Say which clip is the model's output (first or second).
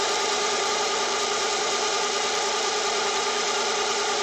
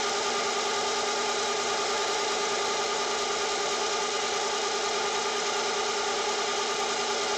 first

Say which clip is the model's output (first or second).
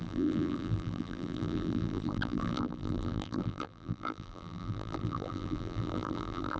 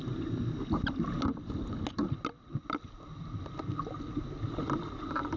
first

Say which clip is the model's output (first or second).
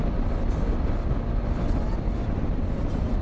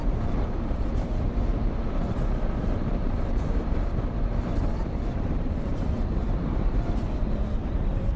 second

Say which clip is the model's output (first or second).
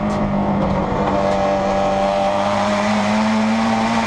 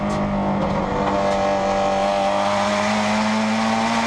first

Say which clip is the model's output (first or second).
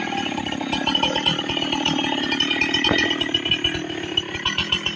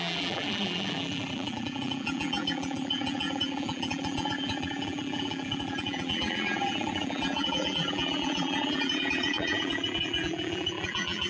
second